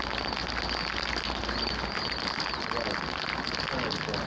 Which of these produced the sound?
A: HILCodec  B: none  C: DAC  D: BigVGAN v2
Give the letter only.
B